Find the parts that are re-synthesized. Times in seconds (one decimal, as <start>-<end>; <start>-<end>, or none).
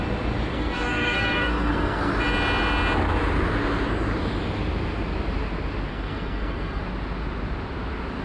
0.5-2.1; 5.9-6.8